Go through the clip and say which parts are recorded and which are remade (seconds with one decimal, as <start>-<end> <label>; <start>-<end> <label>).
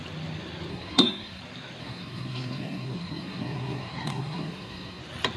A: 0.0-0.7 recorded; 0.7-1.4 remade; 1.4-1.8 recorded; 1.8-5.0 remade; 5.0-5.4 recorded